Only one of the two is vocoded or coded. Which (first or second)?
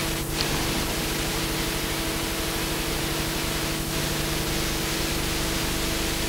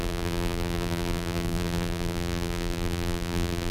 second